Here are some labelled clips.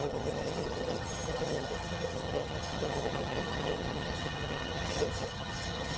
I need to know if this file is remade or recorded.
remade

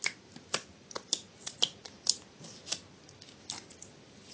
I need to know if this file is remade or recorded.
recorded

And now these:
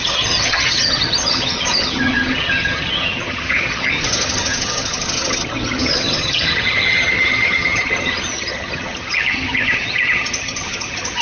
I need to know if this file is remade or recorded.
remade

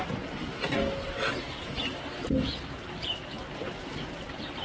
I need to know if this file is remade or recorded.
recorded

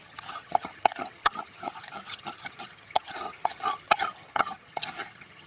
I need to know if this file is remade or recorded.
remade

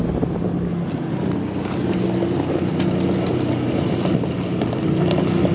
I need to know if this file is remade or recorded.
recorded